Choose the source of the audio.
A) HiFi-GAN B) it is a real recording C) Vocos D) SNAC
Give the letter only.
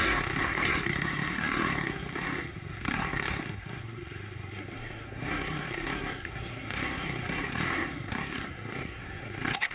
D